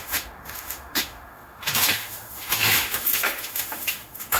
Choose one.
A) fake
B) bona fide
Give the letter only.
A